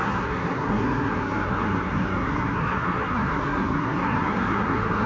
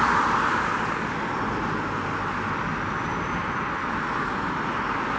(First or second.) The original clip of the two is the second